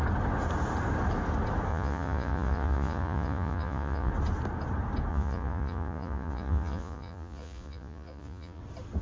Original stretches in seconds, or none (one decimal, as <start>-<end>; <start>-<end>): 0.0-1.7; 4.1-5.1; 8.6-9.0